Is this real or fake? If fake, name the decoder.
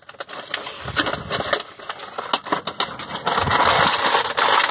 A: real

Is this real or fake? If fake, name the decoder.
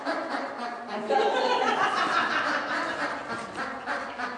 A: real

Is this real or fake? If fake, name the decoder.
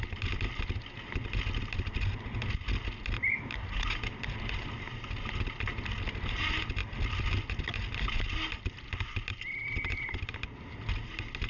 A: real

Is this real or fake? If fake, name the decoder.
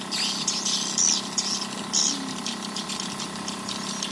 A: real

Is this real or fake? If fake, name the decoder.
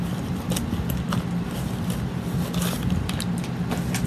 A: real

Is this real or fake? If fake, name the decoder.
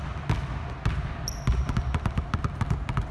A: real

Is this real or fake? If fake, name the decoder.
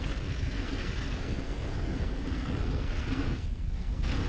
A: fake, codec, SNAC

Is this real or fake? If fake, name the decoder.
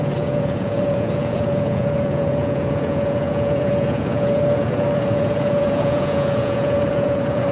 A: fake, vocoder, Vocos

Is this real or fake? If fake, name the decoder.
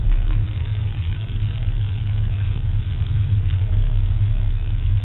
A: fake, codec, SNAC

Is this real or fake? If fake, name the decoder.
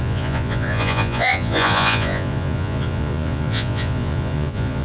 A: fake, vocoder, Vocos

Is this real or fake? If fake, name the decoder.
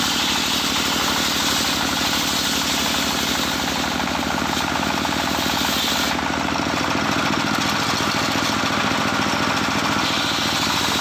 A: real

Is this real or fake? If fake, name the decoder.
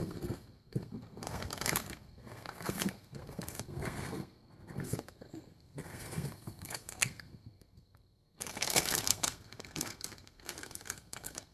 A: fake, codec, SNAC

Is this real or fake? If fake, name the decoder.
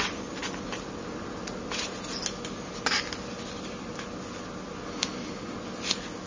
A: real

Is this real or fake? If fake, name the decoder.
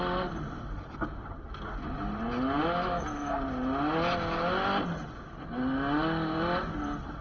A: real